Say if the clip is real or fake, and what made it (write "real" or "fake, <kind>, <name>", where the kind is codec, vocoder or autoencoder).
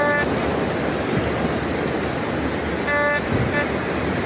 real